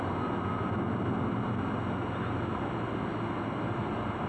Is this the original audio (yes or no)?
yes